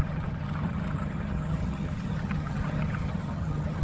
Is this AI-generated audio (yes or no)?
yes